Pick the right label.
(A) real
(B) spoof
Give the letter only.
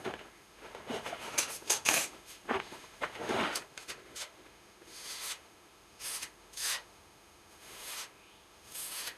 B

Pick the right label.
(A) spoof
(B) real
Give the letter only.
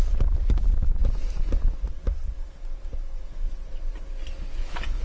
B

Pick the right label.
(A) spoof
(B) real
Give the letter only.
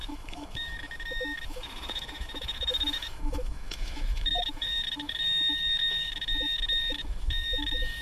A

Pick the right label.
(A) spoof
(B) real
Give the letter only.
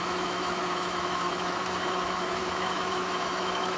A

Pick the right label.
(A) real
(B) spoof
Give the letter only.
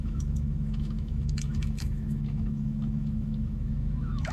B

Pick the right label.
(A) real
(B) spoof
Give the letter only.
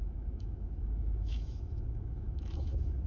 B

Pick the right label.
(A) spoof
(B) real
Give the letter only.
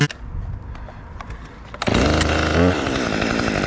B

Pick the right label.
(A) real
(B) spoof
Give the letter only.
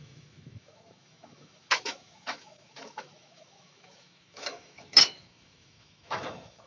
B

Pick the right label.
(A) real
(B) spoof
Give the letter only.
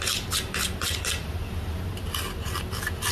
A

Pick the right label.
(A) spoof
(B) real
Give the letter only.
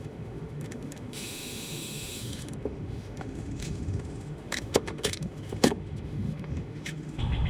A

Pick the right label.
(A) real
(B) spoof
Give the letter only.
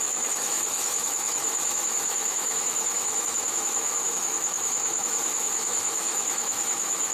B